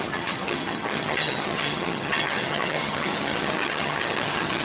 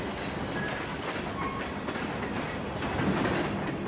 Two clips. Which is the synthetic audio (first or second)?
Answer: first